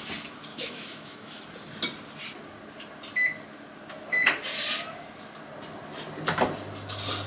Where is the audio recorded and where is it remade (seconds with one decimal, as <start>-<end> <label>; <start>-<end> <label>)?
0.0-0.5 recorded; 0.5-1.4 remade; 1.4-7.3 recorded